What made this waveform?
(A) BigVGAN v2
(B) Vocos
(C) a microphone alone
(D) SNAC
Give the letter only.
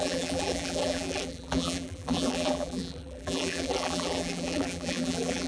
A